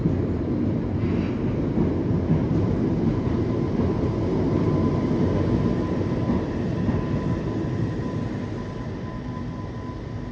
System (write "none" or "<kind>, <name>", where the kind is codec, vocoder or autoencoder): none